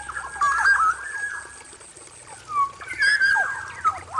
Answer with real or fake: real